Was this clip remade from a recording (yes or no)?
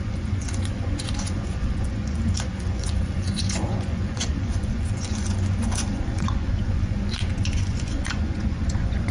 yes